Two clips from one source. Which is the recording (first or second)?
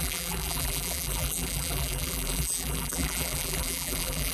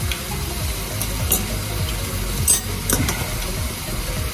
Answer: second